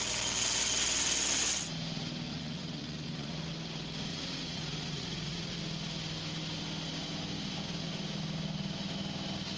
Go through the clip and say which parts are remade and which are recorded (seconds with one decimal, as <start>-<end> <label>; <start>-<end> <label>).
0.0-2.3 recorded; 2.3-3.5 remade; 3.5-4.1 recorded; 4.1-5.6 remade; 5.6-9.6 recorded